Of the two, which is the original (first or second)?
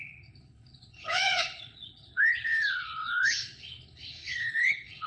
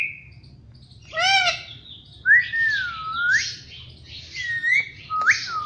second